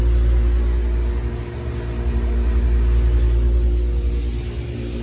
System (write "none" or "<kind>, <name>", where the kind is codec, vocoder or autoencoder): none